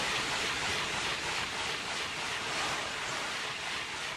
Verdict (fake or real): real